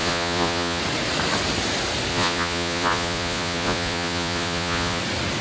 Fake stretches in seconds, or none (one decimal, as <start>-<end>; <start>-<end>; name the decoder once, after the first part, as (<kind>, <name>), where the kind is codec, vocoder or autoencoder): 0.0-0.8 (vocoder, Vocos); 2.1-5.0